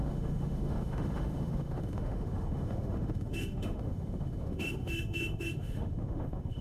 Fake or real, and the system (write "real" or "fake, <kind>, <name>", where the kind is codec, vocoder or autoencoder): fake, autoencoder, DAC-VAE